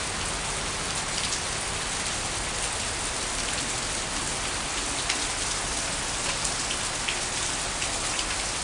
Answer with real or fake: real